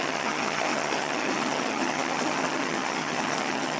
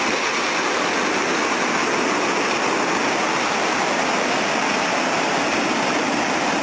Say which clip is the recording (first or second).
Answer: second